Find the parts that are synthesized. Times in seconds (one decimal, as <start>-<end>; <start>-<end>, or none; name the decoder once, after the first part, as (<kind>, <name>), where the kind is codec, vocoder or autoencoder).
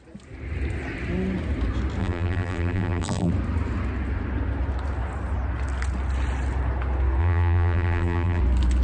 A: 2.0-3.3 (vocoder, BigVGAN v2); 7.2-8.4